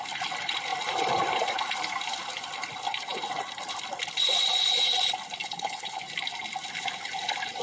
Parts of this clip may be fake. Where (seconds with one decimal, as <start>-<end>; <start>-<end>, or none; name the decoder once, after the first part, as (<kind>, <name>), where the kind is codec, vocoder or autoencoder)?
5.4-6.0 (codec, HILCodec)